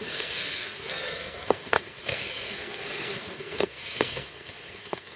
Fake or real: fake